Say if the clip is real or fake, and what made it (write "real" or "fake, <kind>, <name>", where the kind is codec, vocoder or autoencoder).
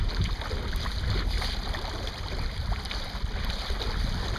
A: real